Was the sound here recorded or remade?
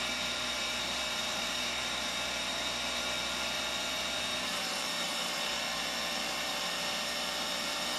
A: remade